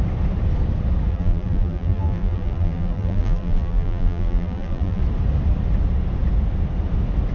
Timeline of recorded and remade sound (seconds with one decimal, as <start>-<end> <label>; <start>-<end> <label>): 0.0-1.1 recorded; 1.1-5.0 remade; 5.0-7.3 recorded

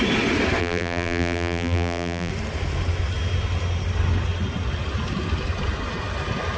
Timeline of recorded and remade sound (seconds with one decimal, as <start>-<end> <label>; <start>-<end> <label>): 0.0-0.6 recorded; 0.6-2.3 remade; 2.3-6.6 recorded

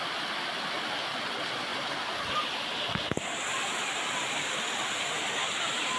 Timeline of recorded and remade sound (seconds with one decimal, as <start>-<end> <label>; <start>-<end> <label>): 0.0-6.0 recorded